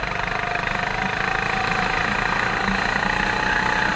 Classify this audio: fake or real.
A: real